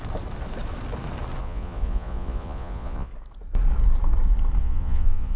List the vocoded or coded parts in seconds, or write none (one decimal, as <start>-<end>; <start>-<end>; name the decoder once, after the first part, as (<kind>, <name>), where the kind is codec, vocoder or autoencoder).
1.4-3.1 (vocoder, Vocos); 4.6-5.4